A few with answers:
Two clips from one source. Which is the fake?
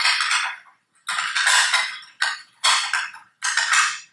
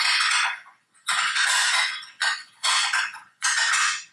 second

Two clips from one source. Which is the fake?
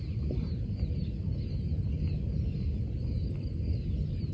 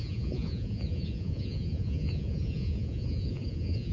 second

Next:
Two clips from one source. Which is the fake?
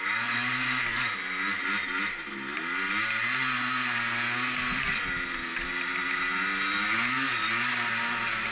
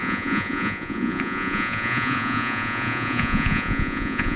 second